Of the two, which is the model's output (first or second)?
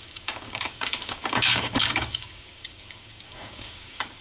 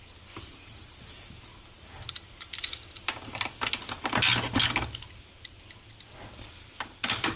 first